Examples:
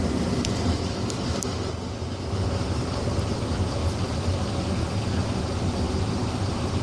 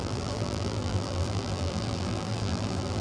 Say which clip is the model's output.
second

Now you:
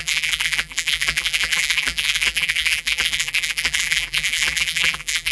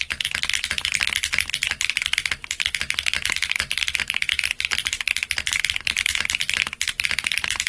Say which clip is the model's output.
first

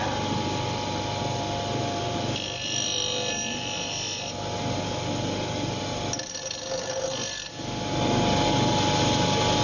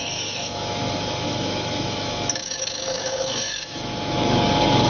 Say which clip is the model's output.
second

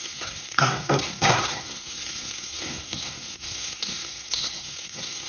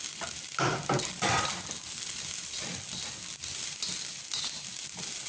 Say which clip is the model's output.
first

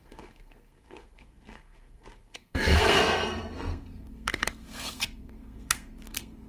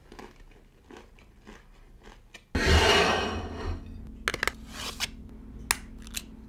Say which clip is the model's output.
first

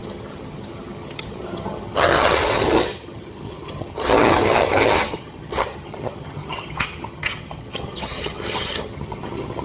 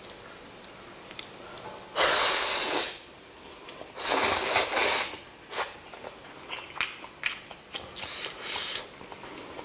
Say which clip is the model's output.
first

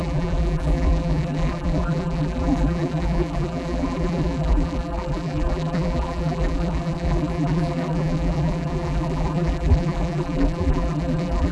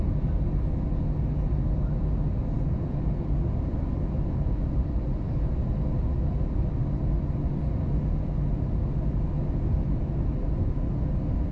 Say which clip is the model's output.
first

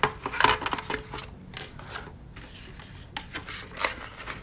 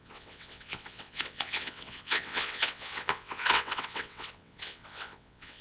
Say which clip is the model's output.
second